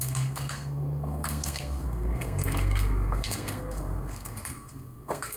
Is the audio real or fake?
fake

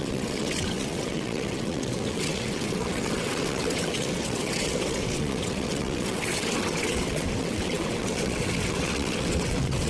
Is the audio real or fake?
fake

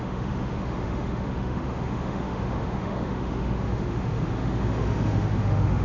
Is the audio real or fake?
fake